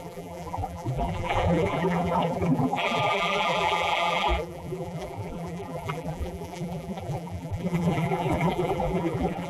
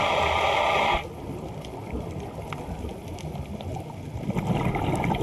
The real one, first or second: second